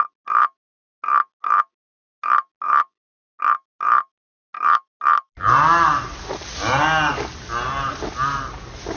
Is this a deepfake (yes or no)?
no